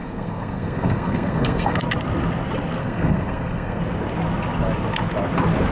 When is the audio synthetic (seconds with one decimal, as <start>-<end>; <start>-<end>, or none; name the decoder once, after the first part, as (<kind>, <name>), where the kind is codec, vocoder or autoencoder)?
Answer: 0.0-1.8 (codec, SNAC); 2.8-3.8